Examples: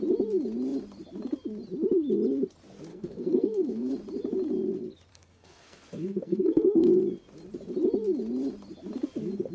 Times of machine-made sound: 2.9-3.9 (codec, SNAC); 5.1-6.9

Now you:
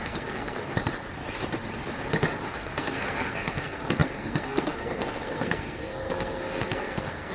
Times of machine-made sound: 0.0-0.7 (codec, SNAC); 2.5-7.3

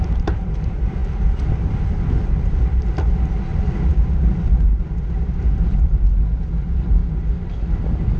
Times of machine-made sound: none

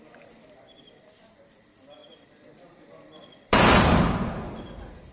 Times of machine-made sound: 0.0-5.1 (vocoder, BigVGAN v2)